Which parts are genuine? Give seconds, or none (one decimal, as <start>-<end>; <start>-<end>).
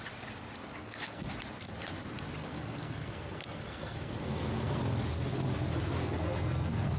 0.0-0.8; 1.3-2.4; 4.8-6.0